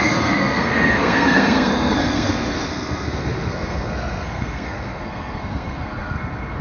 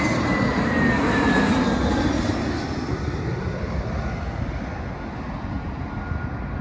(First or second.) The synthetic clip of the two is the first